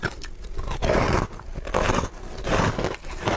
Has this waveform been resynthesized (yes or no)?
no